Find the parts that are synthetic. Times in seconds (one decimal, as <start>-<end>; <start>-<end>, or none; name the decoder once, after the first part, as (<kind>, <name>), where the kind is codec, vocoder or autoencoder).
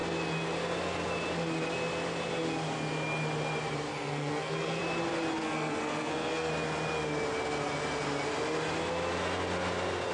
3.9-4.8 (codec, SNAC); 5.4-6.5